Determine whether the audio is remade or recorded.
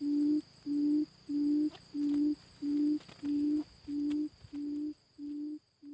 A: recorded